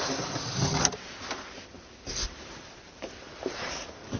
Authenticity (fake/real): real